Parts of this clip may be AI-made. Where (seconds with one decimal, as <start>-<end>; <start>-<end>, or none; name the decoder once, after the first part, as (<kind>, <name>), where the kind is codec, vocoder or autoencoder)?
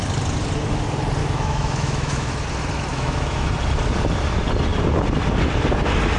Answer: 1.2-2.3 (autoencoder, DAC-VAE); 2.9-3.5